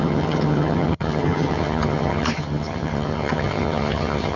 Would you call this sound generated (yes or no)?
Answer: yes